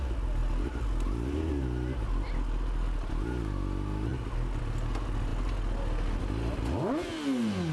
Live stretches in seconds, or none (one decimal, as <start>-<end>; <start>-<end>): 0.0-7.7

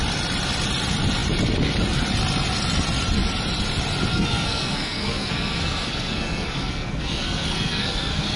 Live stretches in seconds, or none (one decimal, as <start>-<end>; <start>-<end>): 0.0-4.1

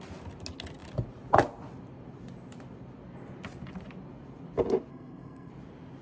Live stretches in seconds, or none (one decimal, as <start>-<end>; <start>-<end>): 0.0-4.9; 5.5-6.0

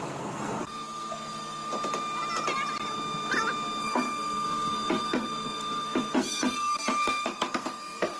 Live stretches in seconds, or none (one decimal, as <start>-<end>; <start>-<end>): 1.7-3.8